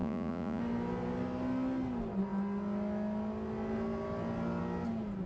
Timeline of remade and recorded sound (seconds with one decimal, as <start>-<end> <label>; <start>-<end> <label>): 0.0-0.6 remade; 0.6-5.3 recorded